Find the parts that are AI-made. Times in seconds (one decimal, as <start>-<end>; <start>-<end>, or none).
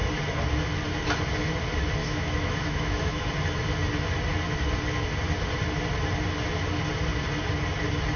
2.0-3.3